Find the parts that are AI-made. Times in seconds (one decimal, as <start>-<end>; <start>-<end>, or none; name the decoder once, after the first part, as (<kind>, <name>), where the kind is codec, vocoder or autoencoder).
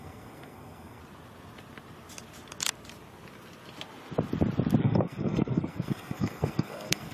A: 0.0-1.0 (codec, SNAC); 4.8-7.1